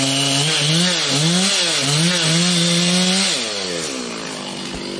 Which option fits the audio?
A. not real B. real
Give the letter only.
B